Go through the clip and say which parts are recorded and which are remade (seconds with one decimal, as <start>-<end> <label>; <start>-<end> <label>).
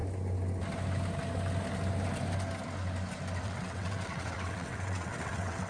0.0-3.4 recorded; 3.4-5.7 remade